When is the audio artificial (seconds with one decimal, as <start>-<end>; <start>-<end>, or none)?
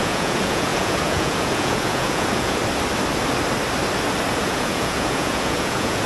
0.0-2.6; 4.3-6.1